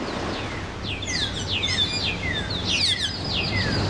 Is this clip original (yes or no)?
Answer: yes